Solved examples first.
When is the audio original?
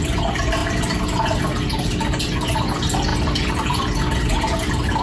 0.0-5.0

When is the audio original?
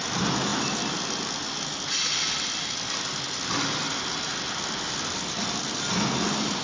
0.0-6.6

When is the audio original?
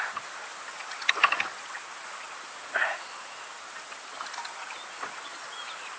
0.0-6.0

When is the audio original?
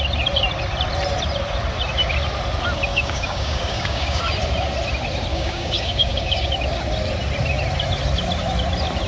0.0-2.9; 4.2-5.3; 6.5-9.1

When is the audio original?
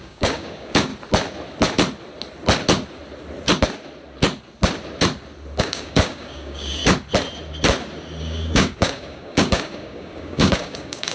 0.9-5.6; 6.8-8.2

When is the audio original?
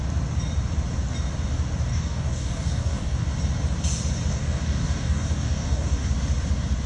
0.0-1.9; 3.3-4.3; 6.1-6.9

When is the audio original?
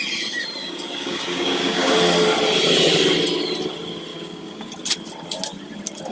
0.0-0.6; 1.9-4.1; 4.7-6.1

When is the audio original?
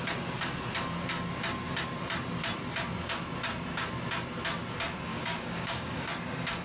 0.0-5.1; 6.1-6.6